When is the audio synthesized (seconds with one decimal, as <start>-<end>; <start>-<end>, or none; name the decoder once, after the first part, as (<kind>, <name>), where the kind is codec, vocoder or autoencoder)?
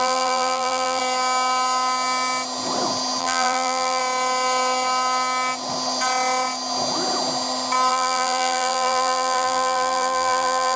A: 0.0-1.0 (vocoder, BigVGAN v2); 3.2-4.0; 7.9-10.8